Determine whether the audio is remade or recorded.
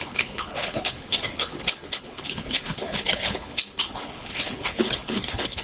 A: remade